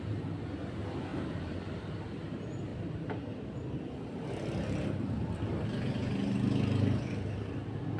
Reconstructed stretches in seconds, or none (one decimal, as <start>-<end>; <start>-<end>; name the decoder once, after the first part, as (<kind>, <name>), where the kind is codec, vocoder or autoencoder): 1.1-2.0 (vocoder, BigVGAN v2); 2.7-7.5